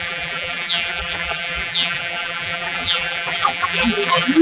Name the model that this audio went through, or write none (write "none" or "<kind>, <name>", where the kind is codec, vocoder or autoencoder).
vocoder, BigVGAN v2